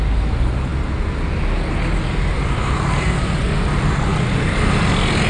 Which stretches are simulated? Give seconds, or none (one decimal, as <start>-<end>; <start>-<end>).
none